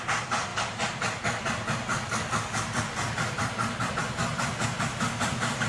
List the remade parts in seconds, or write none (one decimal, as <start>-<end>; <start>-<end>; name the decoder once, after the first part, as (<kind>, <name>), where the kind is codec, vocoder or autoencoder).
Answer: none